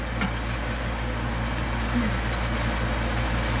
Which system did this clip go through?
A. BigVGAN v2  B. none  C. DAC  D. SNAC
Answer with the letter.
B